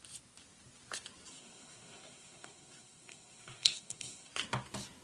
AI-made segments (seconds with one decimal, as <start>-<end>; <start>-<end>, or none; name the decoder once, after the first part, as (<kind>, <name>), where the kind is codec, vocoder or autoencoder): 1.3-4.3 (codec, SNAC)